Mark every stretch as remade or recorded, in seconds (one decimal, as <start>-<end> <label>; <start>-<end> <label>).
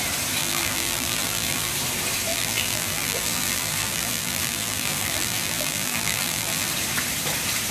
0.0-0.4 recorded; 0.4-1.7 remade; 1.7-2.3 recorded; 2.3-6.7 remade; 6.7-7.7 recorded